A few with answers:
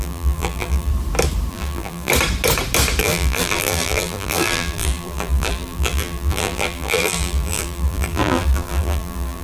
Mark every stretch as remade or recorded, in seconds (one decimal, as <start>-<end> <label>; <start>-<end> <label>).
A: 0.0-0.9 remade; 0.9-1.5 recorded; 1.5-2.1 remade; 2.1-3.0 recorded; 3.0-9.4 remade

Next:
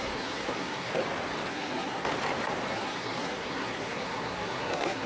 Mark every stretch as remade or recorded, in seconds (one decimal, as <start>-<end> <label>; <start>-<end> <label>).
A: 0.0-0.9 remade; 0.9-1.5 recorded; 1.5-2.1 remade; 2.1-2.7 recorded; 2.7-5.1 remade

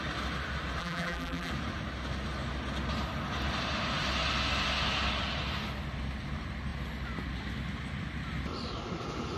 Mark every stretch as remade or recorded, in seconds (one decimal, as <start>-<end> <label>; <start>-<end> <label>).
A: 0.0-0.8 recorded; 0.8-1.5 remade; 1.5-9.4 recorded